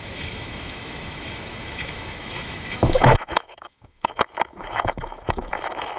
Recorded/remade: remade